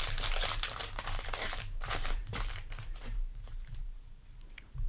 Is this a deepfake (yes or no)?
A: yes